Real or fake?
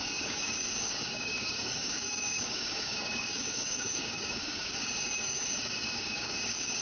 fake